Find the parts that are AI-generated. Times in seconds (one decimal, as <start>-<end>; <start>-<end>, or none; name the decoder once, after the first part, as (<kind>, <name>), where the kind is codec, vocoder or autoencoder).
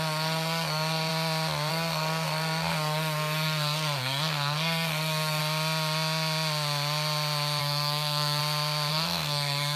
0.0-1.1 (codec, SNAC); 1.7-5.4; 7.6-8.4; 8.9-9.8